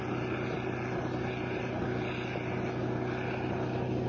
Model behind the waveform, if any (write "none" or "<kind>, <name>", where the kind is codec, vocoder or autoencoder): none